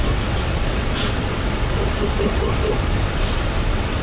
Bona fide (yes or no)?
no